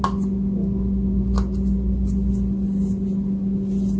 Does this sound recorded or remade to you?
recorded